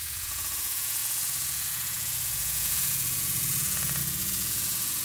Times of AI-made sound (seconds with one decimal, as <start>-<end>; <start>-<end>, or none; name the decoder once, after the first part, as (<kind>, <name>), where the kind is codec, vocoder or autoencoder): 0.0-5.0 (vocoder, Vocos)